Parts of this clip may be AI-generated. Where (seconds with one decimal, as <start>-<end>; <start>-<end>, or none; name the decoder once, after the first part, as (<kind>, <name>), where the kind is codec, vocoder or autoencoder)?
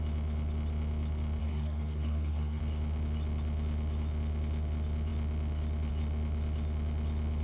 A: 1.4-2.6 (codec, SNAC)